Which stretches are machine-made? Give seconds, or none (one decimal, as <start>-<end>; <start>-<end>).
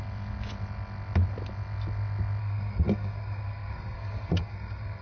2.4-5.0